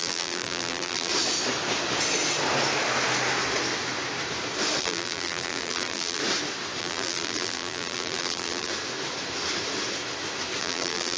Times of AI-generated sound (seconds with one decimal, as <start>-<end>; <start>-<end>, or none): 0.0-1.1; 4.8-6.2; 6.8-8.7; 10.6-11.2